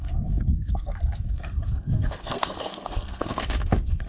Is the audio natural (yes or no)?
no